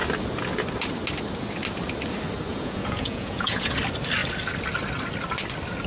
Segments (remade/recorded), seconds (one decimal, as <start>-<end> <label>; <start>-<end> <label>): 0.0-2.5 recorded; 2.5-3.8 remade; 3.8-5.9 recorded

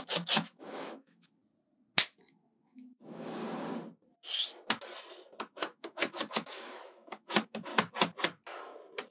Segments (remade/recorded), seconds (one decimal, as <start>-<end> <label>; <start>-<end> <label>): 0.0-1.4 remade; 1.4-2.3 recorded; 2.3-3.4 remade; 3.4-5.4 recorded; 5.4-7.7 remade; 7.7-9.1 recorded

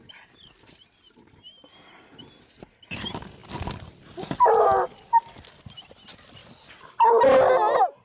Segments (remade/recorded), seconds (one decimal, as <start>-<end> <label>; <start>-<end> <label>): 0.0-8.0 recorded

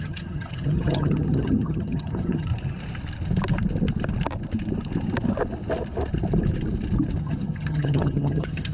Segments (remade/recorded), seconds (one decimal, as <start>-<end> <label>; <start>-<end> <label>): 0.0-2.5 remade; 2.5-7.2 recorded; 7.2-8.7 remade

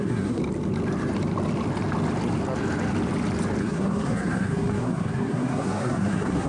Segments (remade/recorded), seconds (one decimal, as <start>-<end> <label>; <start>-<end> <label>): 0.0-0.4 remade; 0.4-3.6 recorded; 3.6-6.5 remade

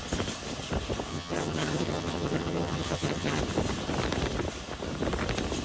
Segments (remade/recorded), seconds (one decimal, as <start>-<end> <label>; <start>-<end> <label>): 0.0-1.1 recorded; 1.1-3.4 remade; 3.4-5.6 recorded

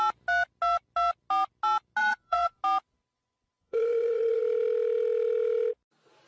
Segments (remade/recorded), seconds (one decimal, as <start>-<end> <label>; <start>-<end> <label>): 0.0-2.0 recorded; 2.0-2.6 remade; 2.6-3.1 recorded; 3.1-4.4 remade; 4.4-6.3 recorded